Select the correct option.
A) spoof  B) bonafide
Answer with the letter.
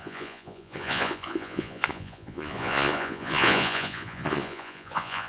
A